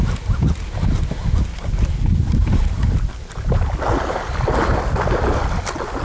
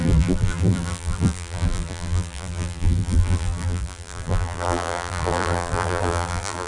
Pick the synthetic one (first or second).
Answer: second